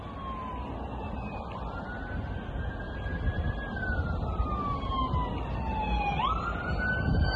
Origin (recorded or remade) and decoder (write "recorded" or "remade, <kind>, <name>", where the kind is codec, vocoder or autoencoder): recorded